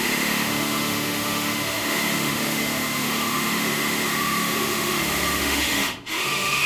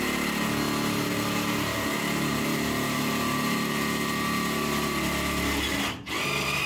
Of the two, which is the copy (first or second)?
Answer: first